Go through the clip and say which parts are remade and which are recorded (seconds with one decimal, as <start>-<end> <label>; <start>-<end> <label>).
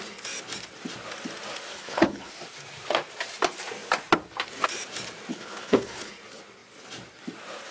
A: 0.0-1.7 recorded; 1.7-2.3 remade; 2.3-5.3 recorded; 5.3-6.1 remade; 6.1-7.7 recorded